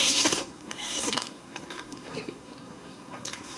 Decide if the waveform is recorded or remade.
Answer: remade